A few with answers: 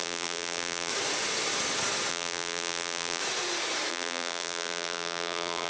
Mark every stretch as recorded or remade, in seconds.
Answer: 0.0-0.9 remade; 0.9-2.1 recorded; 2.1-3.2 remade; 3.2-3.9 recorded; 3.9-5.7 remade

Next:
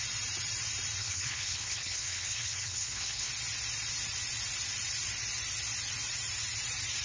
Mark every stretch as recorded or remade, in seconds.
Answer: 0.0-1.0 recorded; 1.0-3.3 remade; 3.3-7.0 recorded

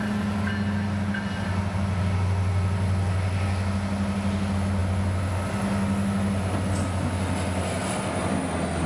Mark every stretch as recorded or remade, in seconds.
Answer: 0.0-8.9 recorded

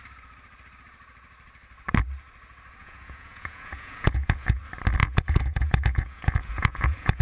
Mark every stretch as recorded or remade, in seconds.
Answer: 0.0-2.8 recorded; 2.8-4.6 remade; 4.6-5.0 recorded; 5.0-7.2 remade

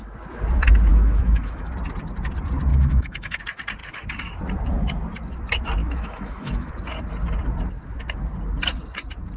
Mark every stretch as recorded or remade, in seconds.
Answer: 0.0-0.9 recorded; 0.9-1.7 remade; 1.7-2.7 recorded; 2.7-3.4 remade; 3.4-5.8 recorded; 5.8-6.7 remade; 6.7-9.4 recorded